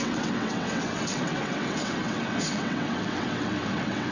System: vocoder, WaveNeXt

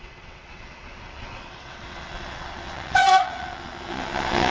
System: vocoder, WaveNeXt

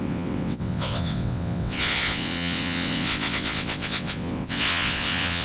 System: vocoder, WaveNeXt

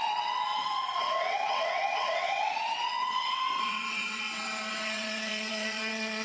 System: vocoder, WaveNeXt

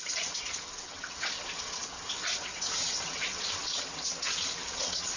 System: vocoder, WaveNeXt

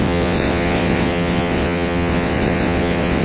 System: vocoder, WaveNeXt